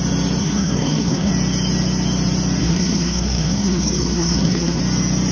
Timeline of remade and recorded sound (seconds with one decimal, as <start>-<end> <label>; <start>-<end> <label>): 0.0-0.4 recorded; 0.4-1.3 remade; 1.3-2.6 recorded; 2.6-4.8 remade; 4.8-5.3 recorded